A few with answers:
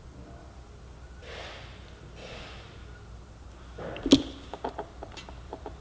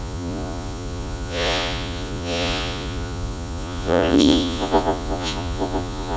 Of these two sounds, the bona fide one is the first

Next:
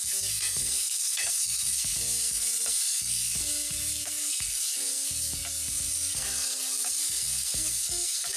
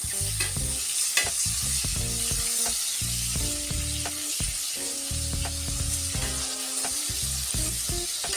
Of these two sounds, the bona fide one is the second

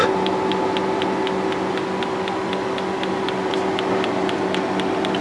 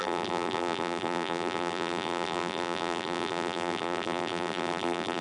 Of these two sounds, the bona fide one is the first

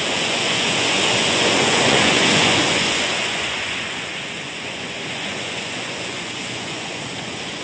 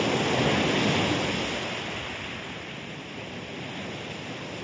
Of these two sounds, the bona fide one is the second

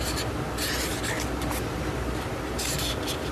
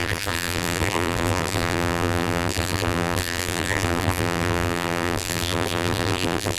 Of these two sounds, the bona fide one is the first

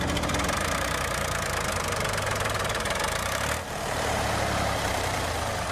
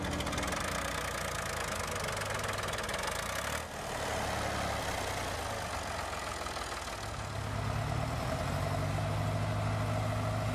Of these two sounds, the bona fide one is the second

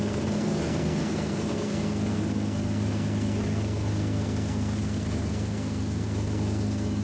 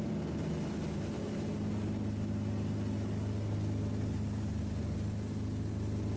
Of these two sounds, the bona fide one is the second